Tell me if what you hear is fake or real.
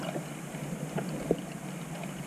real